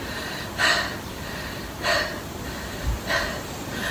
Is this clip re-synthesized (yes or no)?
no